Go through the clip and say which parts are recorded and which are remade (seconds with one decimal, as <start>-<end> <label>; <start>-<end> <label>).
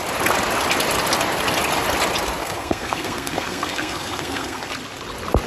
0.0-2.4 recorded; 2.4-4.7 remade; 4.7-5.5 recorded